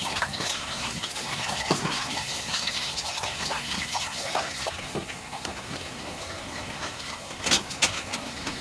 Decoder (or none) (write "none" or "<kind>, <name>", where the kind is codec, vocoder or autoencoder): codec, SNAC